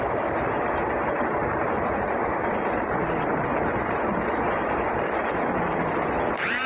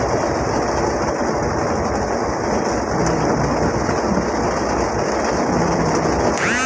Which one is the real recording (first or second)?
second